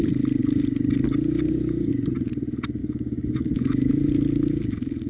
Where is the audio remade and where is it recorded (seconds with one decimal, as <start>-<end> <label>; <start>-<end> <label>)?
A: 0.0-2.8 recorded; 2.8-3.9 remade; 3.9-5.1 recorded